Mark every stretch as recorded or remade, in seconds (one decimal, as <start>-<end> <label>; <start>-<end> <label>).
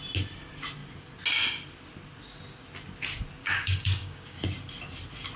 0.0-3.4 recorded; 3.4-4.4 remade; 4.4-5.4 recorded